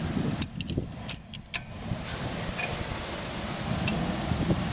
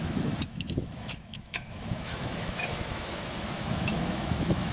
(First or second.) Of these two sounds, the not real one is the second